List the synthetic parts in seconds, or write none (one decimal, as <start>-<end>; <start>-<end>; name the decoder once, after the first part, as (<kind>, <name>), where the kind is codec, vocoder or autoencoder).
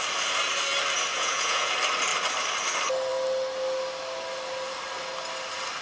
1.1-1.7 (vocoder, Vocos)